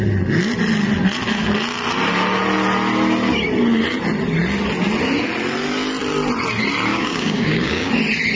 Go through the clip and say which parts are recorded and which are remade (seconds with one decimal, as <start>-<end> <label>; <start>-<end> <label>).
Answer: 0.0-6.9 recorded; 6.9-7.9 remade; 7.9-8.4 recorded